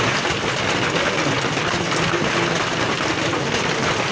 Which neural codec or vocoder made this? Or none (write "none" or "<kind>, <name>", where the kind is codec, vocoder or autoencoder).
none